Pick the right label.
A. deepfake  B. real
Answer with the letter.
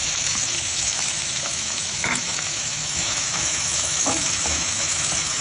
A